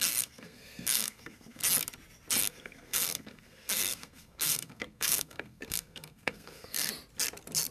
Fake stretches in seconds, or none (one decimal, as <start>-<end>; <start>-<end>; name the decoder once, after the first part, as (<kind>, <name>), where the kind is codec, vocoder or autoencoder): 0.0-1.6 (codec, SNAC); 2.4-6.9